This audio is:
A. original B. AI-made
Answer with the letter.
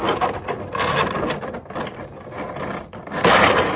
A